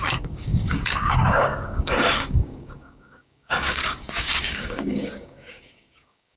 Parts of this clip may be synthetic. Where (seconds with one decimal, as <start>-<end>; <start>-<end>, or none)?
0.0-6.4